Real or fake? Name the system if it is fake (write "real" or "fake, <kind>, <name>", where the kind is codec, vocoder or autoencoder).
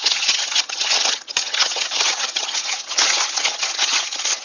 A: fake, vocoder, HiFi-GAN